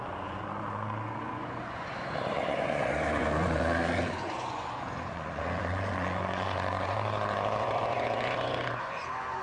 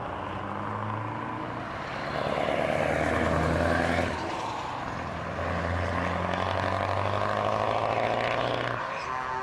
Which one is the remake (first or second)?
first